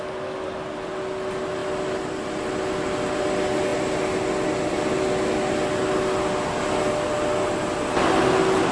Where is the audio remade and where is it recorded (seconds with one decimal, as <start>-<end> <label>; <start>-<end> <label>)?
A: 0.0-8.7 recorded